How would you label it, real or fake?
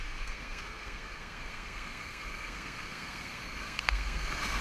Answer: fake